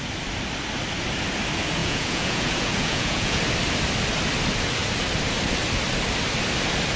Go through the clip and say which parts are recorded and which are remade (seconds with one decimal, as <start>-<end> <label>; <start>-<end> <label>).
0.0-1.8 recorded; 1.8-3.4 remade; 3.4-7.0 recorded